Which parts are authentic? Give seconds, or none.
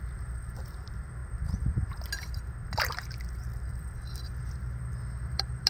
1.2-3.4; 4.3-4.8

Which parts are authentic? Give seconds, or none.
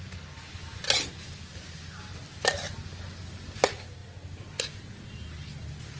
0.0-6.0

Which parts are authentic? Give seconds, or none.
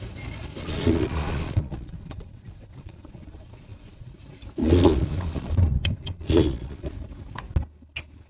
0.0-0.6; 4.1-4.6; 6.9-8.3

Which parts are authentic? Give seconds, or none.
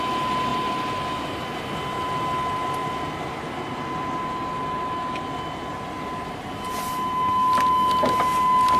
0.0-8.8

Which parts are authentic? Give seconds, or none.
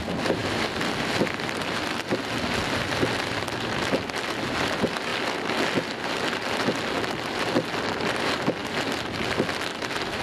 0.0-10.2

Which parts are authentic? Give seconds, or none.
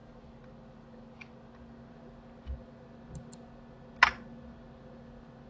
0.0-5.5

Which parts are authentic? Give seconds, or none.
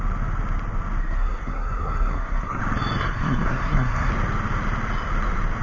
0.0-1.0; 2.6-3.0; 4.1-5.6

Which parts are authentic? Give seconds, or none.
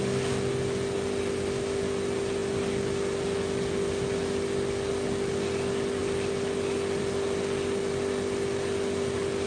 0.0-9.5